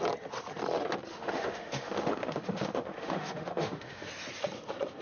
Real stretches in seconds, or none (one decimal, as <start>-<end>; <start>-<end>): 0.0-1.1; 4.1-5.0

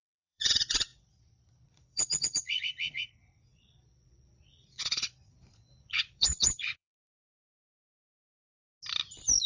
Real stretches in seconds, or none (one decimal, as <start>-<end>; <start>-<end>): 7.2-9.5

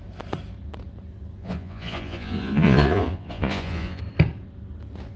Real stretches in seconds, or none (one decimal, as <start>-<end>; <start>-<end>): 0.0-1.4; 4.0-5.2

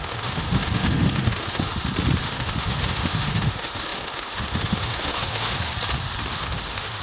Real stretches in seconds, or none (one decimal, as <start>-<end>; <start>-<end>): 1.7-2.2; 5.7-6.3

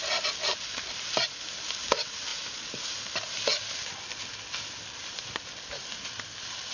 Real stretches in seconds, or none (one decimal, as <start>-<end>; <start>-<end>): 0.0-6.7